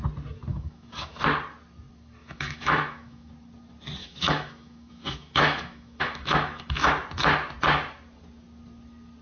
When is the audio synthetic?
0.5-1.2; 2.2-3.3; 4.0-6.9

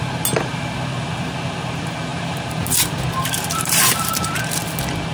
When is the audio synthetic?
2.1-4.5

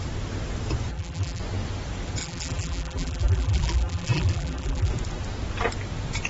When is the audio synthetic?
0.9-1.4; 2.2-4.9

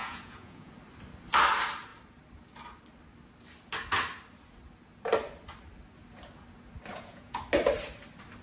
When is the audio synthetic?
0.0-0.7; 6.9-7.4

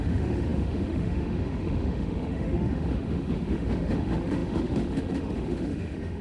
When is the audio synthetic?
0.0-6.2

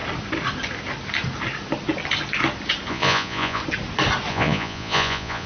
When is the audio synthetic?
2.9-3.6; 4.3-5.5

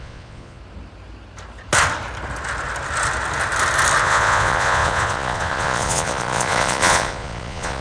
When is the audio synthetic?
0.0-0.6; 4.0-7.8

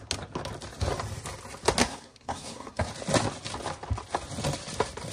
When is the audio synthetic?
1.8-2.9